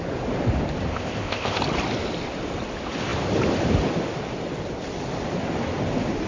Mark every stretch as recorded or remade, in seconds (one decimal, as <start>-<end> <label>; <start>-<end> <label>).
0.0-0.9 recorded; 0.9-1.6 remade; 1.6-6.3 recorded